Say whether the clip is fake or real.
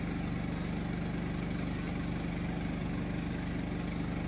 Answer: real